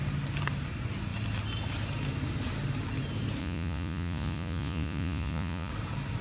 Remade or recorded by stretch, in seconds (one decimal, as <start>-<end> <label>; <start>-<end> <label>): 0.0-3.4 recorded; 3.4-5.7 remade; 5.7-6.2 recorded